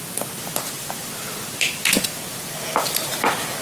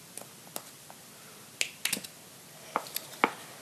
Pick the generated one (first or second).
first